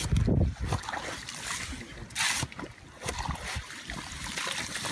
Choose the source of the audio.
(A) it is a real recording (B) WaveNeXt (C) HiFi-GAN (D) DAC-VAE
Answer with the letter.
A